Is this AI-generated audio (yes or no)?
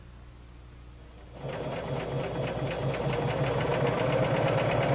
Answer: no